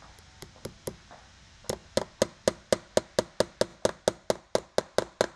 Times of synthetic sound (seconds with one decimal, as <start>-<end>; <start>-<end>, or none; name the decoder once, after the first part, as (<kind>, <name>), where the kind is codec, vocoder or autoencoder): none